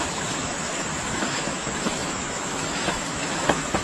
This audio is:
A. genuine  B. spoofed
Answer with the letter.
B